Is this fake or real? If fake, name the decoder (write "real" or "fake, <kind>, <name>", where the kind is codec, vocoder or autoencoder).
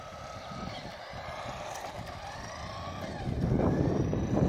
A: real